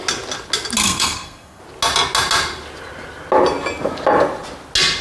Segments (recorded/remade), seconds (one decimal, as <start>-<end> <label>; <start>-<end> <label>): 0.0-0.8 recorded; 0.8-1.6 remade; 1.6-5.0 recorded